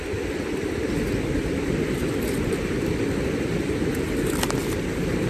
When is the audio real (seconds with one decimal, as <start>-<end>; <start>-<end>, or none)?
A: 0.0-5.3